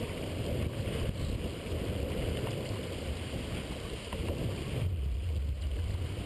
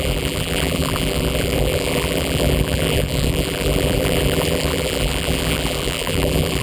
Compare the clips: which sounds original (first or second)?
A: first